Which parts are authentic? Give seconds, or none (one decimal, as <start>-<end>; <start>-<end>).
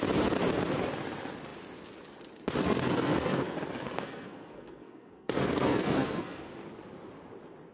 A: 0.0-2.6; 6.5-7.7